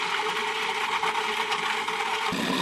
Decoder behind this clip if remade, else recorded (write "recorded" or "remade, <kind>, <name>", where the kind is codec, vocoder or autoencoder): recorded